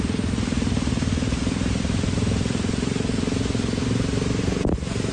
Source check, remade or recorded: recorded